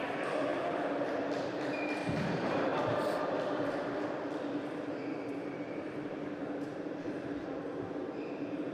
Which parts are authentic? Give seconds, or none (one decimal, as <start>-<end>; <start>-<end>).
none